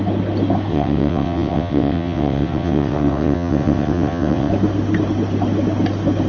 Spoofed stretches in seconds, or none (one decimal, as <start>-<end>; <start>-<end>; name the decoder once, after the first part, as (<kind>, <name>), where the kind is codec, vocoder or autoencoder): 0.7-4.5 (vocoder, WaveNeXt)